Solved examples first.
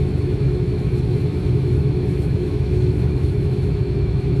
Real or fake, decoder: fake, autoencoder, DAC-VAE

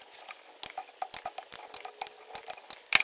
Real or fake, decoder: real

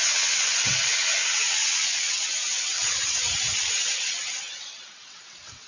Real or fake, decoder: fake, vocoder, WaveNeXt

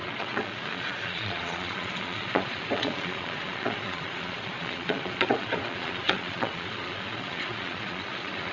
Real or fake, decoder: fake, vocoder, Vocos